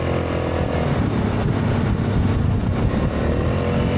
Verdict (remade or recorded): recorded